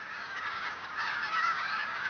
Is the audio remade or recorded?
remade